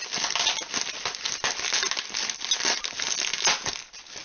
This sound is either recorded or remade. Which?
recorded